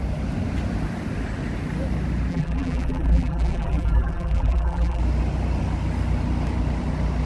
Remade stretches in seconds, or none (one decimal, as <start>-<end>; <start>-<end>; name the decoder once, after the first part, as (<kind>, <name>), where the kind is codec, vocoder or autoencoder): 2.3-5.0 (vocoder, BigVGAN v2)